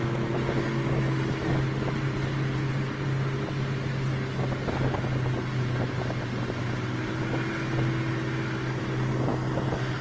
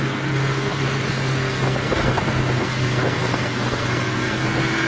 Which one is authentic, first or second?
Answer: first